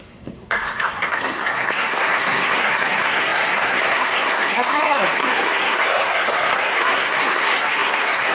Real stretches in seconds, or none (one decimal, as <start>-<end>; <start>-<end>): none